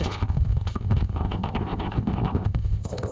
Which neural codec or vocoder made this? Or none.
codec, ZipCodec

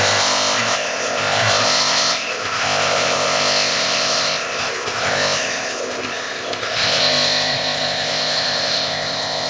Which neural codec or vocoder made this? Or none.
codec, ZipCodec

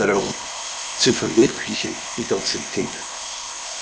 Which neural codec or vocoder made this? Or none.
codec, ZipCodec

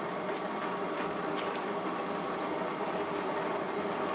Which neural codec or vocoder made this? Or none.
none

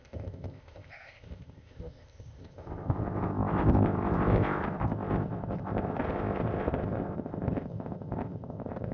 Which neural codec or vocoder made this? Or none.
codec, ZipCodec